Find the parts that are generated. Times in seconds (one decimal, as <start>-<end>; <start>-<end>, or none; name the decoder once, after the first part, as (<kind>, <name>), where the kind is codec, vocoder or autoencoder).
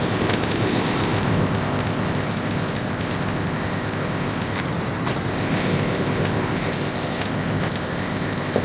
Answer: 0.0-4.6 (codec, ZipCodec); 5.3-8.6